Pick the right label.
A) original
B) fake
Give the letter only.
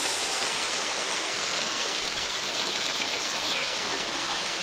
B